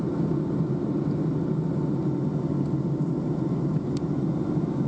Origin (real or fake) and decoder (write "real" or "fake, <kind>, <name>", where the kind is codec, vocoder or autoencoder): real